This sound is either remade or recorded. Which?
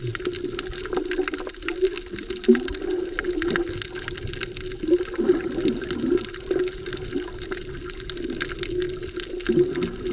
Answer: recorded